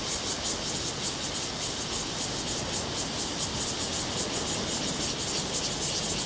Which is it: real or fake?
real